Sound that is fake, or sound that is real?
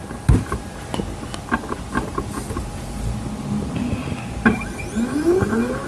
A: real